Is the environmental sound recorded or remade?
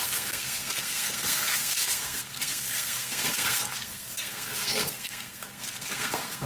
remade